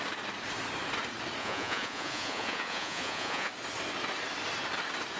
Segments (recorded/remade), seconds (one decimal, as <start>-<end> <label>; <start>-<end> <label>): 0.0-1.4 recorded; 1.4-3.5 remade; 3.5-5.2 recorded